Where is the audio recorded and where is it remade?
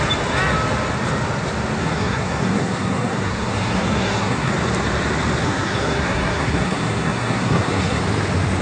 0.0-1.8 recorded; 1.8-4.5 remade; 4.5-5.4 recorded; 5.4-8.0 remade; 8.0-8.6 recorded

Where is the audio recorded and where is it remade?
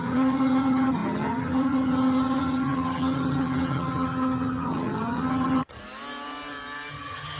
0.0-5.8 remade; 5.8-6.9 recorded; 6.9-7.4 remade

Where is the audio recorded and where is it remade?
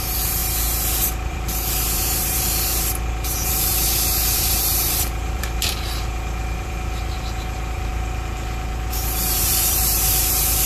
0.0-0.4 remade; 0.4-1.0 recorded; 1.0-2.7 remade; 2.7-3.5 recorded; 3.5-7.9 remade; 7.9-8.9 recorded; 8.9-10.7 remade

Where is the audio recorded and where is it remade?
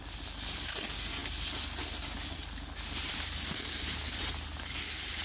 0.0-1.2 recorded; 1.2-4.3 remade; 4.3-5.2 recorded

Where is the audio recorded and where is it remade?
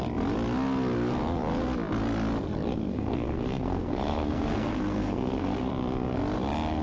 0.0-2.9 recorded; 2.9-5.7 remade; 5.7-6.8 recorded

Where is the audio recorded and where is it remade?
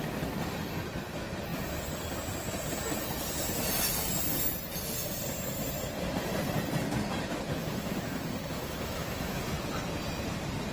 0.0-7.6 recorded; 7.6-9.4 remade; 9.4-10.7 recorded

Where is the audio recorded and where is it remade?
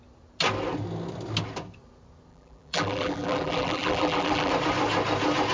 0.0-2.3 recorded; 2.3-4.5 remade; 4.5-5.5 recorded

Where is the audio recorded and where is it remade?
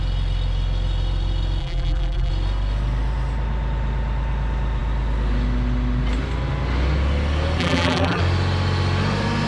0.0-1.6 recorded; 1.6-2.3 remade; 2.3-7.6 recorded; 7.6-8.2 remade; 8.2-9.5 recorded